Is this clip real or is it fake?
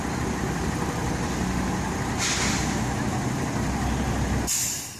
real